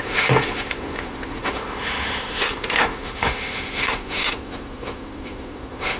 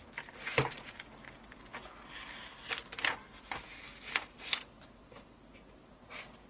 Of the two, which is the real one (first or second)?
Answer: second